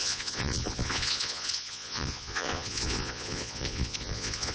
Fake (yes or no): yes